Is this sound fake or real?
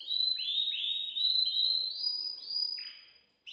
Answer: real